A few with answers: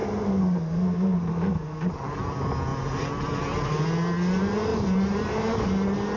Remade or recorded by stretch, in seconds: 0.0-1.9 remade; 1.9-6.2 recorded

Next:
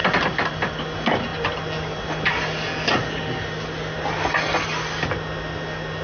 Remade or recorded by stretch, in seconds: 0.0-6.0 recorded